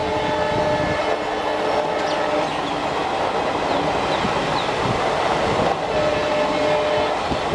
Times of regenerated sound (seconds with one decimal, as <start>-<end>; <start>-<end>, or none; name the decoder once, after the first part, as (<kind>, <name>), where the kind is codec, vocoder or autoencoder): none